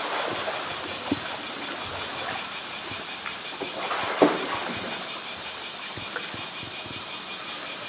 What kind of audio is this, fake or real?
real